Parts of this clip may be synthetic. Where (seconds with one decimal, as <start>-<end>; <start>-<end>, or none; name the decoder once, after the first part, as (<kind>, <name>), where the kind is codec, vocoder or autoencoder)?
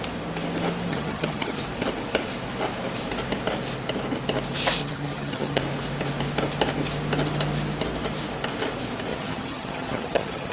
0.9-1.6 (vocoder, HiFi-GAN); 4.8-5.6; 9.1-10.5